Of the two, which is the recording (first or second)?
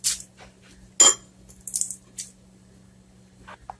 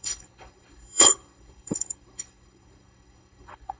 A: first